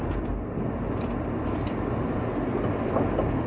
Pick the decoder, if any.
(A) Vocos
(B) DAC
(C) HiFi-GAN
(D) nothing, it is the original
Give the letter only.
D